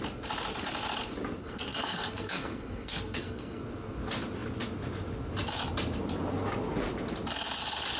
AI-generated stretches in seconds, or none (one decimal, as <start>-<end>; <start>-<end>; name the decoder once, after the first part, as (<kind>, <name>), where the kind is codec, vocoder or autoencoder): 1.4-3.6 (codec, SNAC)